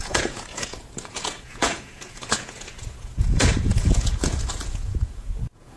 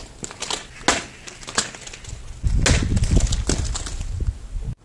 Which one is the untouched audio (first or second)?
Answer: second